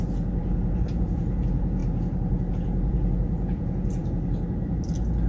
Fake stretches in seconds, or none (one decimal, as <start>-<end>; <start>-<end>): 0.0-0.4; 1.0-1.8; 2.5-4.0